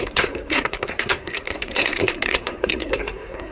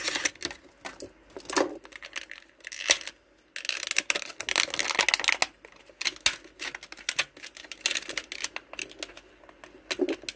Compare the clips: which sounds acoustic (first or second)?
second